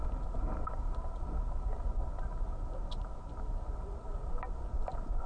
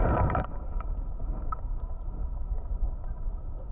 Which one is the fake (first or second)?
second